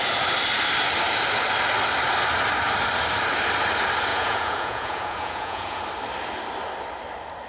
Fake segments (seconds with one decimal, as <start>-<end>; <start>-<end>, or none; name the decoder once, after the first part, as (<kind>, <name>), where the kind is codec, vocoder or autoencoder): 4.1-5.8 (vocoder, Vocos)